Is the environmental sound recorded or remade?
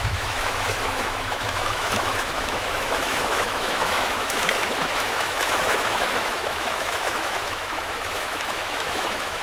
remade